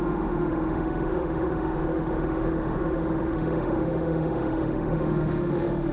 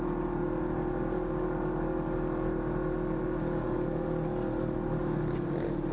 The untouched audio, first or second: second